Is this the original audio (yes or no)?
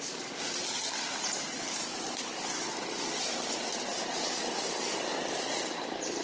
yes